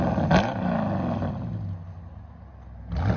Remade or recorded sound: recorded